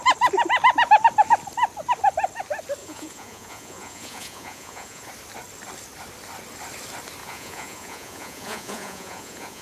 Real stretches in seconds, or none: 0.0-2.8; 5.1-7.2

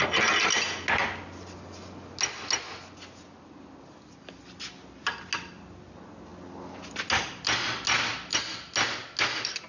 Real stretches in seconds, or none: 0.0-9.7

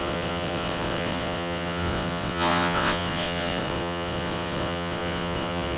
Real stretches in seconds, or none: none

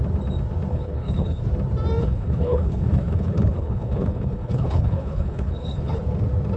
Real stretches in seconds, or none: 0.0-0.7; 1.4-2.0; 6.0-6.6

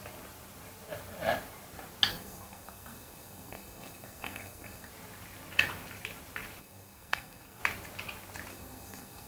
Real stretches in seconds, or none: 0.0-2.1; 4.9-6.6; 7.6-8.5

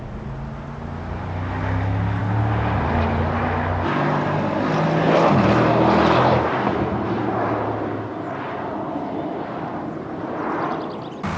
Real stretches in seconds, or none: 0.0-11.4

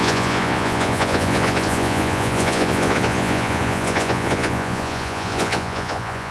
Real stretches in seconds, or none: none